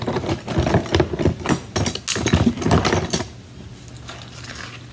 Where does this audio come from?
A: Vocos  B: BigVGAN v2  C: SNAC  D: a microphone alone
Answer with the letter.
D